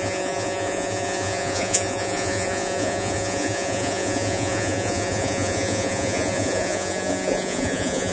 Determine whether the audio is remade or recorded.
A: remade